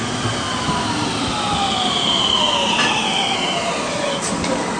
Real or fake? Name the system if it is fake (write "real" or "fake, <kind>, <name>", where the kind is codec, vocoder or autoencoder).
real